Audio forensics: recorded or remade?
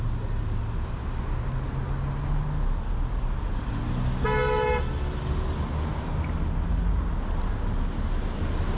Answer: recorded